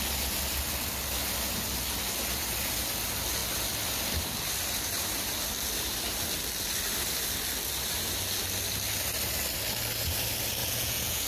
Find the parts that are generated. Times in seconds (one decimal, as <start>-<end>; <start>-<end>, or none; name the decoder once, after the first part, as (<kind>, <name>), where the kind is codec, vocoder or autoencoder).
10.6-11.3 (vocoder, Vocos)